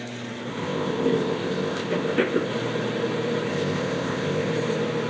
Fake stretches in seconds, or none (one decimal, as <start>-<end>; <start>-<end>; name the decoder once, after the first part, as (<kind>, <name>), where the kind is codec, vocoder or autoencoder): 0.5-2.5 (codec, ZipCodec); 3.5-4.5